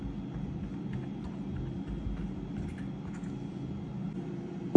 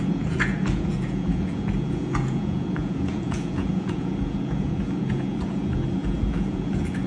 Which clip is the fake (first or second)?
second